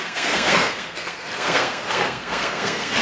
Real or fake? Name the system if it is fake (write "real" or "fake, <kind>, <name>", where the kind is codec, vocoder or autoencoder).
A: fake, codec, SNAC